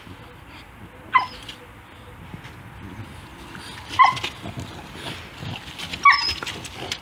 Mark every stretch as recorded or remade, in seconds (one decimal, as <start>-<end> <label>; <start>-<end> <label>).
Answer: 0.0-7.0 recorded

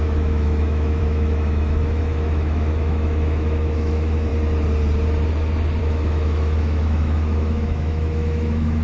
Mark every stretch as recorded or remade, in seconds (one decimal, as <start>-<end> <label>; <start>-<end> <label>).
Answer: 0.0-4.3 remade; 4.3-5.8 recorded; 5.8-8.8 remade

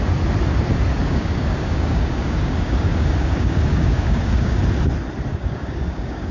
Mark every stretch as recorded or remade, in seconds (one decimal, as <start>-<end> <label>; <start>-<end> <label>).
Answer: 0.0-1.0 recorded; 1.0-4.6 remade; 4.6-5.3 recorded; 5.3-6.3 remade